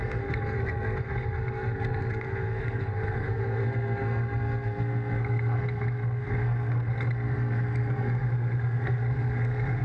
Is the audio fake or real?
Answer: fake